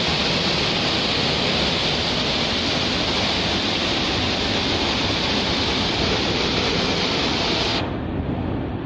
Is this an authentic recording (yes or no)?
yes